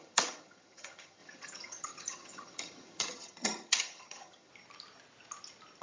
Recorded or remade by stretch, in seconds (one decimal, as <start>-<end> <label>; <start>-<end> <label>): 0.0-4.5 remade; 4.5-5.8 recorded